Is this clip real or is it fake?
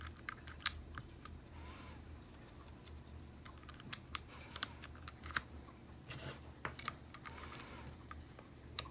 fake